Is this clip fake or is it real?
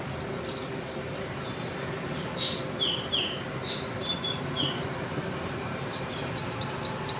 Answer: real